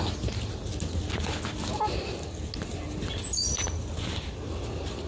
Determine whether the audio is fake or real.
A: real